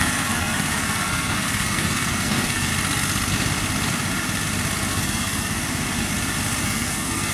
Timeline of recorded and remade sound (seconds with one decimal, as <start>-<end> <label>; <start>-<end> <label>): 0.0-2.7 remade; 2.7-4.9 recorded; 4.9-5.6 remade; 5.6-6.6 recorded; 6.6-7.3 remade